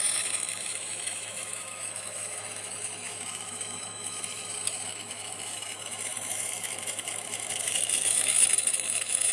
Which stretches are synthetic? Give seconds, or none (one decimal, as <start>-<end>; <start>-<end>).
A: 0.0-9.3